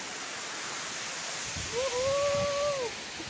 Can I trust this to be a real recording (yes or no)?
yes